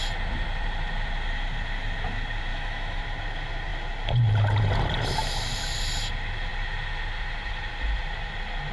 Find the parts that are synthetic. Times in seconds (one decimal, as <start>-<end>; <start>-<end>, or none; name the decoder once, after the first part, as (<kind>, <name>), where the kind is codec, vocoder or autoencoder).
2.5-3.0 (autoencoder, DAC-VAE)